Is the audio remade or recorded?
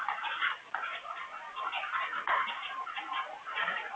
recorded